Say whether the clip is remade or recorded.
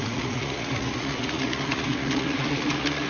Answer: remade